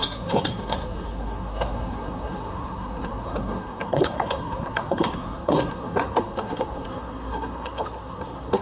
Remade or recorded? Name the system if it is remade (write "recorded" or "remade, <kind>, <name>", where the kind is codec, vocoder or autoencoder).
remade, codec, SNAC